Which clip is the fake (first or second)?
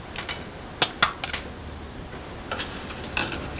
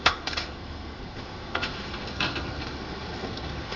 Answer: second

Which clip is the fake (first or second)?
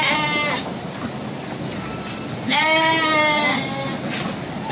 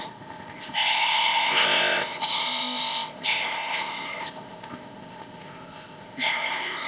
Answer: second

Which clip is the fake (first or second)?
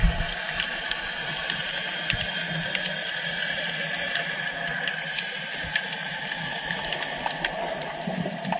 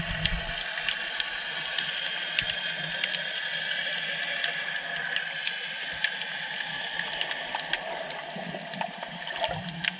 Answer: first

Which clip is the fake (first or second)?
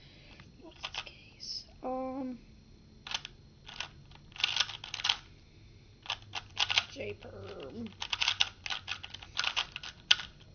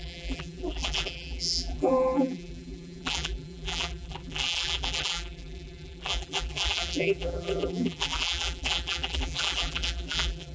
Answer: second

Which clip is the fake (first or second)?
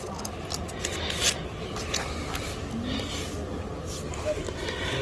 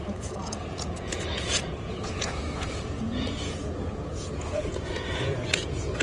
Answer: second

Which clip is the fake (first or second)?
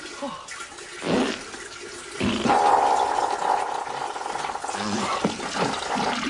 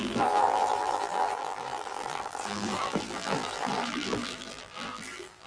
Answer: second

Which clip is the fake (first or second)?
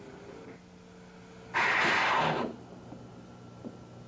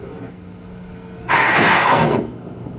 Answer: second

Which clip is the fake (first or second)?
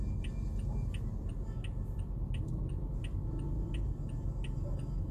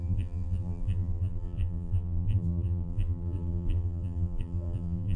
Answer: second